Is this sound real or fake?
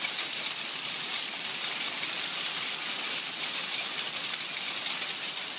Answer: real